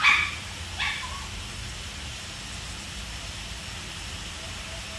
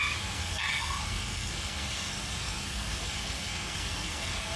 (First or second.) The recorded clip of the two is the first